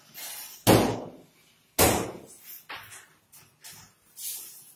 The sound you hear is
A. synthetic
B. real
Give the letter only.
B